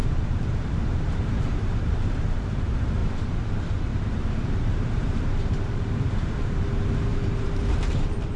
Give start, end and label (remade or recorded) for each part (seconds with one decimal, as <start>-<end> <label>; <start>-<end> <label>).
0.0-2.5 remade; 2.5-3.0 recorded; 3.0-6.6 remade; 6.6-7.1 recorded; 7.1-8.4 remade